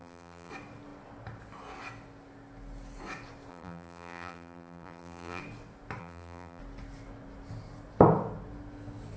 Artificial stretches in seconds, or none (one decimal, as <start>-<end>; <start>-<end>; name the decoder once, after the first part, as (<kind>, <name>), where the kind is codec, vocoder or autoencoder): 0.0-0.5 (vocoder, BigVGAN v2); 3.5-5.4; 6.0-6.6